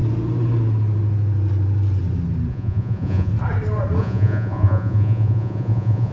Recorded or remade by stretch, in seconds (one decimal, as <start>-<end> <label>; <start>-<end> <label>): 0.0-2.5 recorded; 2.5-3.3 remade; 3.3-4.0 recorded; 4.0-6.1 remade